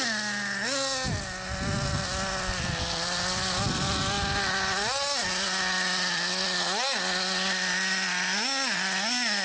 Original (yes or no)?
yes